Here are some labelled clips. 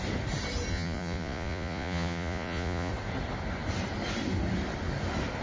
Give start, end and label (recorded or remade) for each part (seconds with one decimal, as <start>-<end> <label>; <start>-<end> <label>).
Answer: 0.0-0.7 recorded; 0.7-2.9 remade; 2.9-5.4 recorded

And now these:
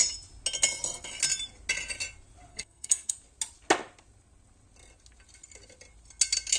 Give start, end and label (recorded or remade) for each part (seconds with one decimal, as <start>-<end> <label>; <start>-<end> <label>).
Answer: 0.0-2.5 recorded; 2.5-3.1 remade; 3.1-6.6 recorded

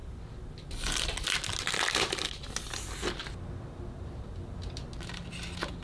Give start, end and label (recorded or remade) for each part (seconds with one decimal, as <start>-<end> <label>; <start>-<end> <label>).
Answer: 0.0-5.8 recorded

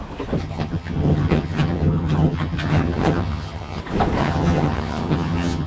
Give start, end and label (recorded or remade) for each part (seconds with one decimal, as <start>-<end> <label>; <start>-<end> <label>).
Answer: 0.0-0.4 recorded; 0.4-3.8 remade; 3.8-4.2 recorded; 4.2-5.7 remade

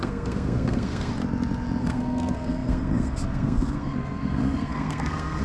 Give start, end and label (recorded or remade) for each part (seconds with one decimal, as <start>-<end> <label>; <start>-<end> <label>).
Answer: 0.0-1.1 remade; 1.1-1.8 recorded; 1.8-5.4 remade

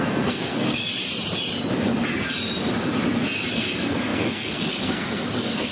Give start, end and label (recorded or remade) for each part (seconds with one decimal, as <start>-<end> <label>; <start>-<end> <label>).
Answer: 0.0-0.8 remade; 0.8-3.5 recorded; 3.5-5.7 remade

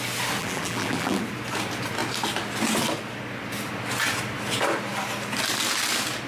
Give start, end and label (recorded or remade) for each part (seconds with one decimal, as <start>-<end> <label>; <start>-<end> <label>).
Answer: 0.0-0.4 recorded; 0.4-1.2 remade; 1.2-6.3 recorded

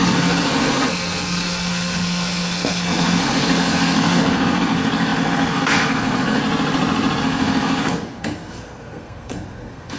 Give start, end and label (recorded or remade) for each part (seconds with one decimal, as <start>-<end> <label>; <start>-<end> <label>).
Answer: 0.0-6.4 remade; 6.4-7.2 recorded; 7.2-10.0 remade